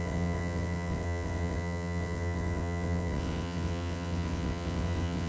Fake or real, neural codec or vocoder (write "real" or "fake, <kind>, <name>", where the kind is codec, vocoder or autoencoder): fake, vocoder, WaveNeXt